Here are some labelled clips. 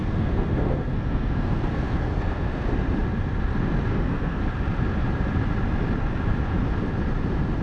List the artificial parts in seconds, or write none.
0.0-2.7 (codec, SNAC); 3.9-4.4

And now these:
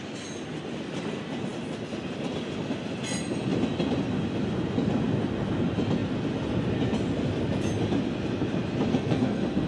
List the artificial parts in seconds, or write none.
8.9-9.7 (codec, SNAC)